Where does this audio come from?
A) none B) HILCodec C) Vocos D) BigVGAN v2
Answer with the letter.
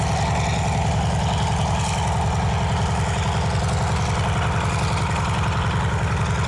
A